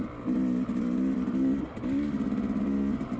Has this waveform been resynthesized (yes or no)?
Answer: no